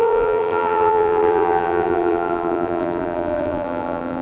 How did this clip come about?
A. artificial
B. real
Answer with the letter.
A